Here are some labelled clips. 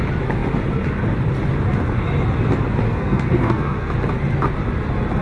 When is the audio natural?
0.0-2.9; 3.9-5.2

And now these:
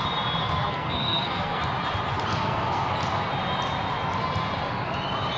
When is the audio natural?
0.0-0.4; 1.6-2.3; 2.9-5.4